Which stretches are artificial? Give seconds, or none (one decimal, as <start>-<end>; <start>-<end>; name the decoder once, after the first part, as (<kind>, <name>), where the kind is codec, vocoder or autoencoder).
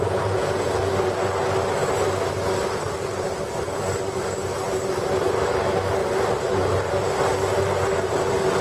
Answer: 0.0-0.8 (vocoder, Vocos)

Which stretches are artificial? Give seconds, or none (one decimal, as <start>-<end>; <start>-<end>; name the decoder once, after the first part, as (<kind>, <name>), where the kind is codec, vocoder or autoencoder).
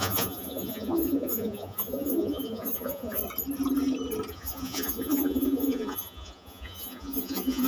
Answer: 0.0-3.2 (vocoder, Vocos); 4.3-7.7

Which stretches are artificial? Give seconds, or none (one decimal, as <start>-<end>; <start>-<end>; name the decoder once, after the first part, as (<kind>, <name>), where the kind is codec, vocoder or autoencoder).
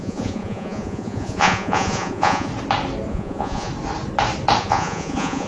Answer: 0.0-2.5 (vocoder, Vocos); 3.1-3.7; 4.6-5.5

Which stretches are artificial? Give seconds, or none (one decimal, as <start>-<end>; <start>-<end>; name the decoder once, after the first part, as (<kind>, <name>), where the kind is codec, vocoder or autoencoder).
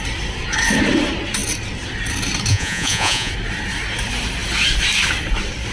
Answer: 2.5-3.3 (vocoder, Vocos)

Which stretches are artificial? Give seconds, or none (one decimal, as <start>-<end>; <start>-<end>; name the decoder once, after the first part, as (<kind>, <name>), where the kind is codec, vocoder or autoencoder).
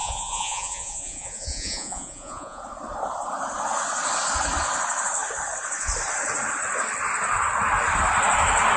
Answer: 0.0-2.6 (vocoder, Vocos)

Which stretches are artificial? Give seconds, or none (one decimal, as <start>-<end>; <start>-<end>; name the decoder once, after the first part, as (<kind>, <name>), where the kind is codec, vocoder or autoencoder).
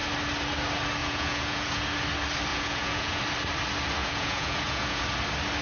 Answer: 1.0-1.8 (vocoder, Vocos); 2.5-3.2; 4.0-5.0